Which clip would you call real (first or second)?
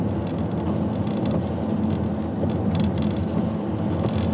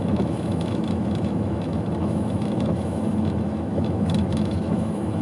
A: first